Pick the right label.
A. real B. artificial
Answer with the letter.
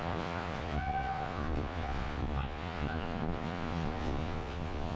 B